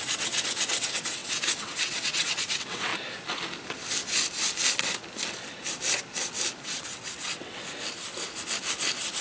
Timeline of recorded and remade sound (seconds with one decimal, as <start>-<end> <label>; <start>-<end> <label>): 0.0-2.9 remade; 2.9-6.6 recorded; 6.6-7.6 remade; 7.6-9.2 recorded